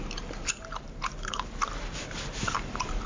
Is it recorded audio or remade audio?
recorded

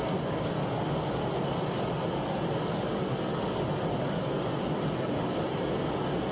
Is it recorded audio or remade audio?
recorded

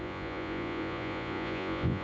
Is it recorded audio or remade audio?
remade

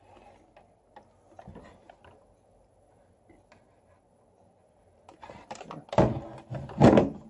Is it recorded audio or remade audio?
recorded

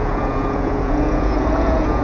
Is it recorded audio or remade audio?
remade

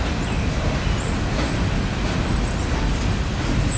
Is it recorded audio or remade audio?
recorded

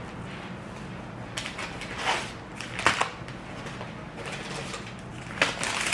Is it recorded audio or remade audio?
recorded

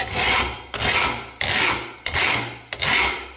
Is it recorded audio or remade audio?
recorded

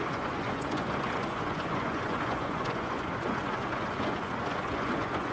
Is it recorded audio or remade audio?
remade